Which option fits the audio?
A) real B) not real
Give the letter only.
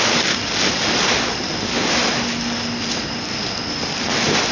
A